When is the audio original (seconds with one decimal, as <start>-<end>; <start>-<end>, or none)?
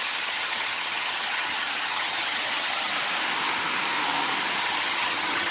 2.9-4.6